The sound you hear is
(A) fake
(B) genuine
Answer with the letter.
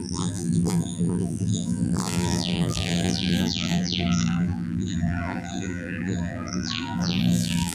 A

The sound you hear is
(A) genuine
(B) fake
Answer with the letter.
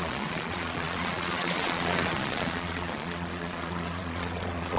B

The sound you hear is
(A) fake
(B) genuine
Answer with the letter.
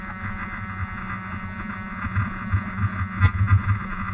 A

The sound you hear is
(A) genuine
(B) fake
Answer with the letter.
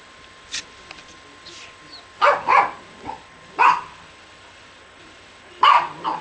A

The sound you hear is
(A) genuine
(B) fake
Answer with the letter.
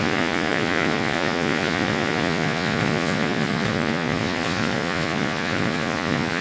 B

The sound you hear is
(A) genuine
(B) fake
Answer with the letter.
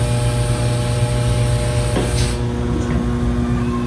A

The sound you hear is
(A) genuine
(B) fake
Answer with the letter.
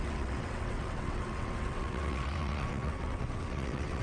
B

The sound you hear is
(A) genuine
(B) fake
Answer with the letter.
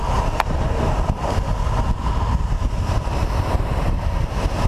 A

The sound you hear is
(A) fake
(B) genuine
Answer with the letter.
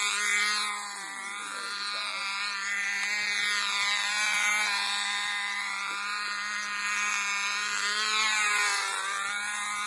A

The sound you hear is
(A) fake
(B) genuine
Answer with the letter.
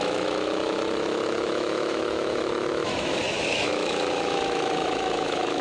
A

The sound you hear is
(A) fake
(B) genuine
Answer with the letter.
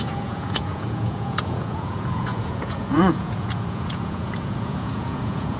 A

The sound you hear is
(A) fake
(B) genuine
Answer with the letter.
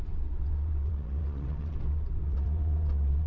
A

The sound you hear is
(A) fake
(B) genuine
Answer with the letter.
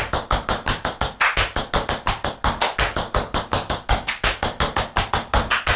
B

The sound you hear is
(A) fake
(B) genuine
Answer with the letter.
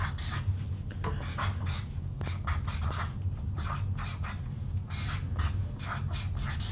B